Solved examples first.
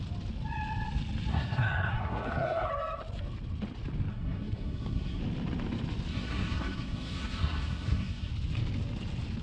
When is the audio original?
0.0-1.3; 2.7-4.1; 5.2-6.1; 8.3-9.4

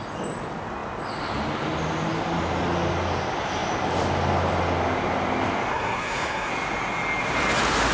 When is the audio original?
0.0-5.7; 6.5-7.9

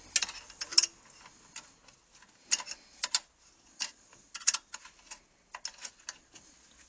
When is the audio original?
0.0-6.9